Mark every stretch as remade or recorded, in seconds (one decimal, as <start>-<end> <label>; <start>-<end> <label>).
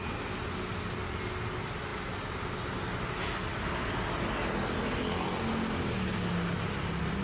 0.0-7.2 recorded